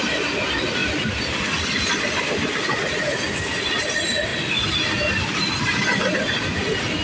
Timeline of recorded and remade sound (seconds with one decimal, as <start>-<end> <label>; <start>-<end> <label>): 0.0-7.0 recorded